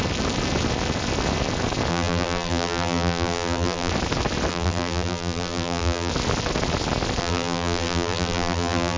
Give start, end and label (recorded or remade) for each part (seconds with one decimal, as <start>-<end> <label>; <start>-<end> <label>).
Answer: 0.0-1.9 recorded; 1.9-3.9 remade; 3.9-4.5 recorded; 4.5-6.1 remade; 6.1-7.2 recorded; 7.2-9.0 remade